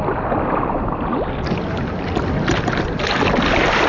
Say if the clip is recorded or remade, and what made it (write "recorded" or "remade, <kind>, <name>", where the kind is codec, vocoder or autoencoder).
recorded